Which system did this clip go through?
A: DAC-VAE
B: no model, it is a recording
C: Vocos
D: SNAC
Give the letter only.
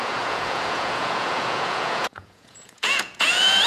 C